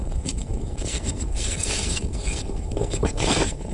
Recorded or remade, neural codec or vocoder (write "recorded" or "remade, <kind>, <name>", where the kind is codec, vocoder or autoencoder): remade, codec, SNAC